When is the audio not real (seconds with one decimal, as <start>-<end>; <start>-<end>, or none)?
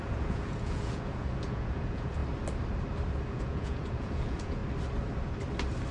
0.0-2.2; 3.3-4.6